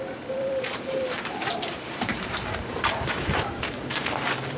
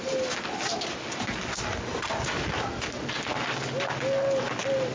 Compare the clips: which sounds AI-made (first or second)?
first